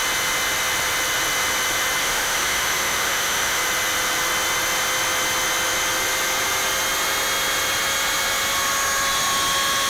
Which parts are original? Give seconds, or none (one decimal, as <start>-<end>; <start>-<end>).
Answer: 0.0-2.0; 3.6-9.9